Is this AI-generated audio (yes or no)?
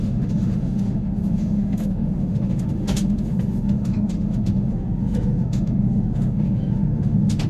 yes